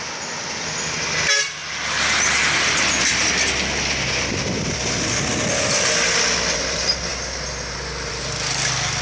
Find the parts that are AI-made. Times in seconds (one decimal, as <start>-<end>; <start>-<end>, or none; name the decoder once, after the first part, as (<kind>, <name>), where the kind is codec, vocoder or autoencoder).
none